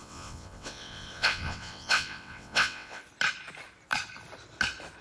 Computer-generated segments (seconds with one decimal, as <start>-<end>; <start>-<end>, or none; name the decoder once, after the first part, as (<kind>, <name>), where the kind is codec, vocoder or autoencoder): 0.0-3.0 (vocoder, WaveNeXt)